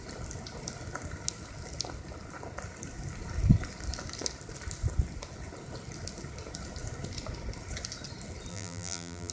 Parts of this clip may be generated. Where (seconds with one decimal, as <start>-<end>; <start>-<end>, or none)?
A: 8.5-9.3